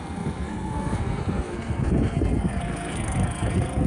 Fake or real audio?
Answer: fake